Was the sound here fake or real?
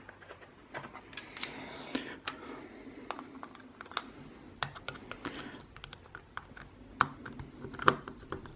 real